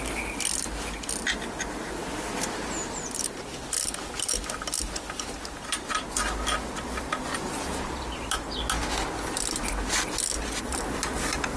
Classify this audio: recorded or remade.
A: recorded